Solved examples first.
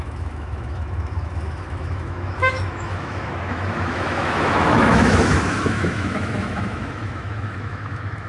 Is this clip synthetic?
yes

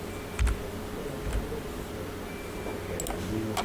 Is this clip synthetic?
no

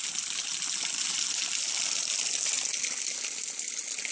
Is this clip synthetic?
no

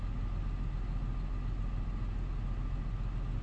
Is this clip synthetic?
no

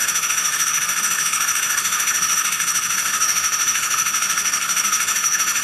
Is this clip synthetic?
yes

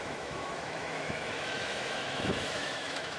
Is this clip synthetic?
yes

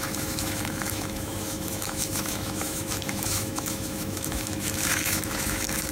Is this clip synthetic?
yes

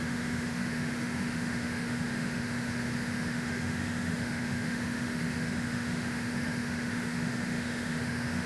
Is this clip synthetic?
yes